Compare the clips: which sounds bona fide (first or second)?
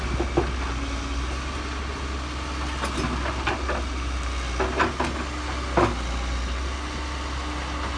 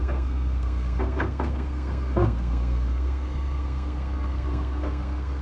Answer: first